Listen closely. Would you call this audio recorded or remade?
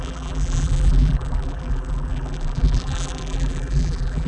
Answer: remade